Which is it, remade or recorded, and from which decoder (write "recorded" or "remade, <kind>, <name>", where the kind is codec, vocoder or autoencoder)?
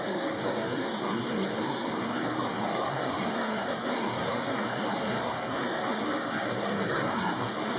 remade, codec, SNAC